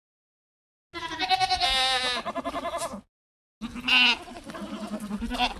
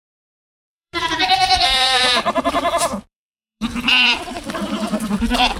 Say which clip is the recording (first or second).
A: first